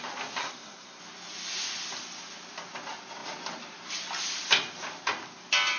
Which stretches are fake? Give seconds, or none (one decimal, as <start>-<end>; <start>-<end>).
0.4-1.0